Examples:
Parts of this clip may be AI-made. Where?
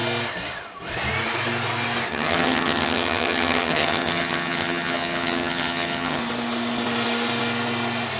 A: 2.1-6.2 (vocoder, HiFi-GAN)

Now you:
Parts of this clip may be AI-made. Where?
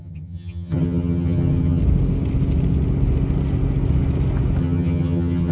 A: 0.0-1.8 (vocoder, HiFi-GAN); 4.6-5.5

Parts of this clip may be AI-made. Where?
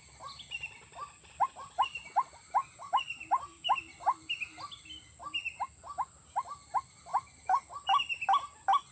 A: none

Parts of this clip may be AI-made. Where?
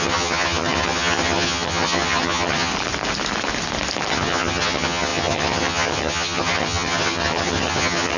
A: 0.0-2.7 (vocoder, HiFi-GAN); 4.1-8.2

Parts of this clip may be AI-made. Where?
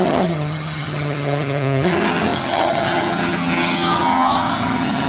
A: 0.0-5.1 (vocoder, HiFi-GAN)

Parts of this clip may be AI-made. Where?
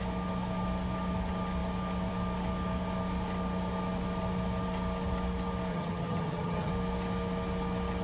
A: 5.7-6.7 (vocoder, HiFi-GAN)